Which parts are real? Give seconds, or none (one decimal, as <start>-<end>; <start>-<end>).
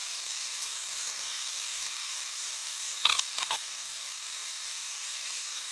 none